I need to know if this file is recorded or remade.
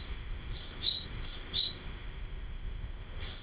remade